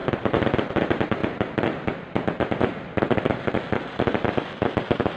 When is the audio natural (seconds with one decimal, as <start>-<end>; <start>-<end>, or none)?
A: 0.7-1.2; 3.6-5.2